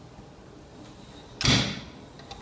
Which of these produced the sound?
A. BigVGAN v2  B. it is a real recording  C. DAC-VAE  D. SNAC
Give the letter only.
B